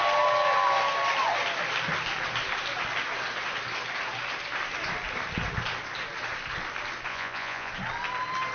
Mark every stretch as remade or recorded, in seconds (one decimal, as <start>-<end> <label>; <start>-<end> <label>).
0.0-7.1 recorded; 7.1-7.7 remade; 7.7-8.5 recorded

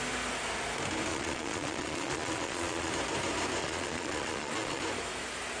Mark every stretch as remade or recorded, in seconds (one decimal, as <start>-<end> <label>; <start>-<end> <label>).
0.0-1.1 recorded; 1.1-2.9 remade; 2.9-3.6 recorded; 3.6-4.8 remade; 4.8-5.6 recorded

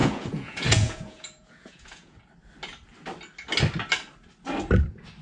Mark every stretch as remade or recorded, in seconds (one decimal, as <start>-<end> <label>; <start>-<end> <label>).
0.0-2.2 remade; 2.2-5.2 recorded

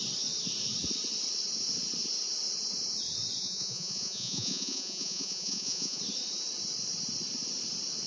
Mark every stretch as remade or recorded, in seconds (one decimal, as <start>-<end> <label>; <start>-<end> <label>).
0.0-3.4 recorded; 3.4-6.0 remade; 6.0-8.1 recorded

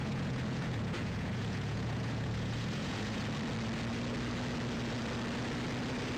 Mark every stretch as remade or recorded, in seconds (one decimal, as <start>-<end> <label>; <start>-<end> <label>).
0.0-3.2 remade; 3.2-6.2 recorded